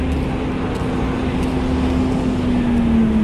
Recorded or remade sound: recorded